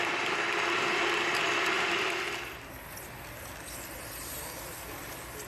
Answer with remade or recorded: recorded